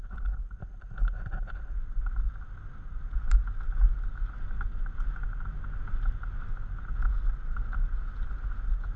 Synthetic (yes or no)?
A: no